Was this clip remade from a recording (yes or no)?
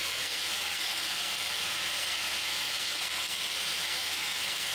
yes